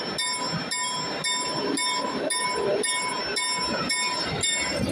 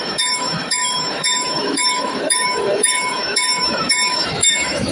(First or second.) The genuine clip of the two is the first